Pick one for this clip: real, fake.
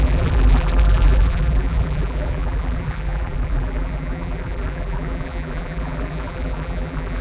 fake